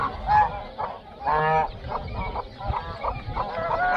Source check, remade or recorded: recorded